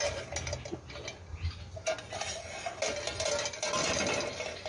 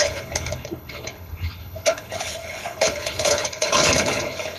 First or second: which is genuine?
first